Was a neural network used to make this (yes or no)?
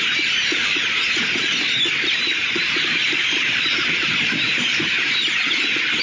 no